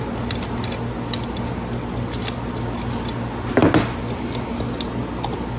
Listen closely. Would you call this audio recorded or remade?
recorded